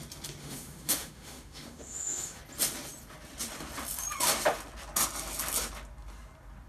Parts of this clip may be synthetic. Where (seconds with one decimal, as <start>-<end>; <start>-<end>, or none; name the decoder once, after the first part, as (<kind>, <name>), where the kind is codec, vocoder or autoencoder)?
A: 0.4-2.4 (autoencoder, DAC-VAE)